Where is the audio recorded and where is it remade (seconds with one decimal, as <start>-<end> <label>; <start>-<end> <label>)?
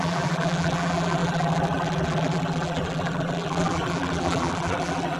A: 0.0-5.2 remade